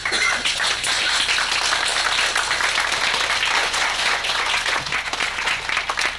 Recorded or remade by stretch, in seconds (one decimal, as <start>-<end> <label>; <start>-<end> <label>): 0.0-1.2 remade; 1.2-3.6 recorded; 3.6-5.6 remade; 5.6-6.2 recorded